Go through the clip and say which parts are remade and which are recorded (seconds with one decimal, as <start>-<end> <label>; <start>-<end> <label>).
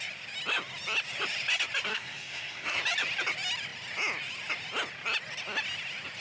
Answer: 0.0-1.9 recorded; 1.9-2.8 remade; 2.8-6.2 recorded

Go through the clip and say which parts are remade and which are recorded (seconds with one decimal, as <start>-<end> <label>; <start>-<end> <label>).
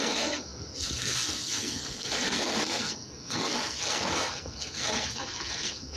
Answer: 0.0-6.0 remade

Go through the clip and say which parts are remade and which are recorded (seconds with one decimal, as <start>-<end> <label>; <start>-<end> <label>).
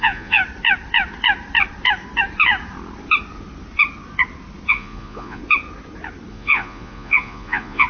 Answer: 0.0-0.4 remade; 0.4-4.7 recorded; 4.7-5.4 remade; 5.4-6.3 recorded; 6.3-7.9 remade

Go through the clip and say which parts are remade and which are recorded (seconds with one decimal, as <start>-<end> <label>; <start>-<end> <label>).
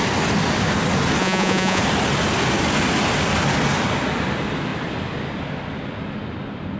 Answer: 0.0-1.2 recorded; 1.2-1.8 remade; 1.8-6.8 recorded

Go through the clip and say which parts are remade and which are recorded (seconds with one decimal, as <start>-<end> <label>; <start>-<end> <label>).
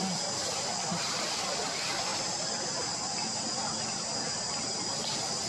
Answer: 0.0-5.5 recorded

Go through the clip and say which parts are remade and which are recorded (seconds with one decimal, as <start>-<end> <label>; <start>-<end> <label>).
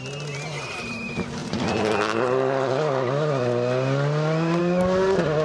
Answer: 0.0-5.4 recorded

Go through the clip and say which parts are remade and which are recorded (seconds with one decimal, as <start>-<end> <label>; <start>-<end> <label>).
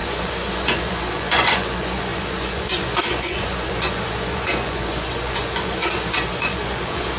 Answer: 0.0-7.2 remade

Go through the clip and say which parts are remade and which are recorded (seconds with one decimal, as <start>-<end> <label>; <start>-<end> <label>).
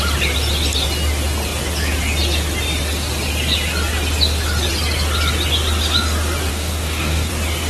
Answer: 0.0-6.5 recorded; 6.5-7.3 remade; 7.3-7.7 recorded